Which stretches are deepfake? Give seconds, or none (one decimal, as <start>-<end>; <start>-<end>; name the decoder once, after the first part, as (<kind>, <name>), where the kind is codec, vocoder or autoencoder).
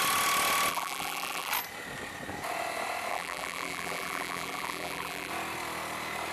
0.7-1.5 (vocoder, BigVGAN v2); 3.1-5.3